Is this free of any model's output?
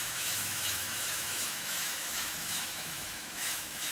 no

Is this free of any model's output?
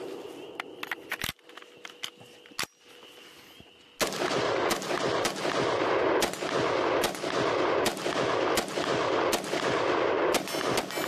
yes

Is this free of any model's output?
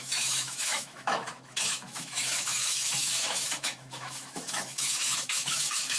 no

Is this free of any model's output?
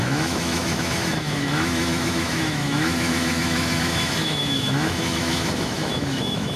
no